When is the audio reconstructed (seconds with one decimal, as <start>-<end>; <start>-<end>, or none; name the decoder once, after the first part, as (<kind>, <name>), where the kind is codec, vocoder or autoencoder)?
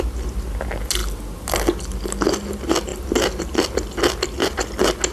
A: none